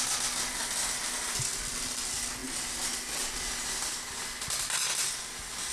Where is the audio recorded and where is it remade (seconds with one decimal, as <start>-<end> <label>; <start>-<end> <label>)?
0.0-5.7 recorded

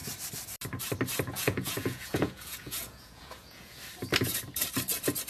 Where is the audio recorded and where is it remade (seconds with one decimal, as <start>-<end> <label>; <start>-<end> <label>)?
0.0-1.3 recorded; 1.3-3.8 remade; 3.8-5.3 recorded

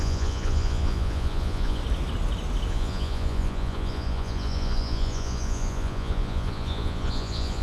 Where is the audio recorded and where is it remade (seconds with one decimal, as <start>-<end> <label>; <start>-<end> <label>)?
0.0-1.8 remade; 1.8-2.7 recorded; 2.7-7.6 remade

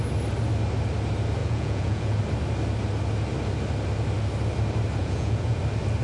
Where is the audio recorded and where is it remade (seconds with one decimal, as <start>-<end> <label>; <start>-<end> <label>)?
0.0-1.4 recorded; 1.4-2.2 remade; 2.2-5.0 recorded; 5.0-5.6 remade; 5.6-6.0 recorded